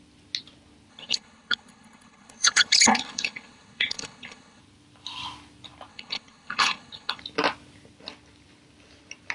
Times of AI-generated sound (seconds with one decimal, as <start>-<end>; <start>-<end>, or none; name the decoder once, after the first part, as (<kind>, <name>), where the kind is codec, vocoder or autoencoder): 0.9-4.6 (codec, HILCodec); 5.9-7.2